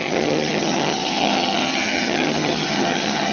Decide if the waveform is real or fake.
fake